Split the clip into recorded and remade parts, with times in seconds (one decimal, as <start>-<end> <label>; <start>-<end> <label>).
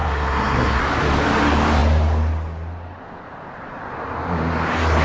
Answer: 0.0-0.8 remade; 0.8-5.0 recorded